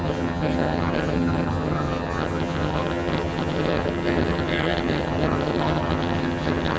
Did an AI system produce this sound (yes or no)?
yes